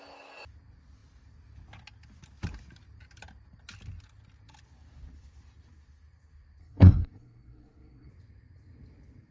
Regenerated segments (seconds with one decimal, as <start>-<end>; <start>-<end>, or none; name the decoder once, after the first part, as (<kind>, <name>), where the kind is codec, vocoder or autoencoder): 6.6-8.1 (codec, SNAC)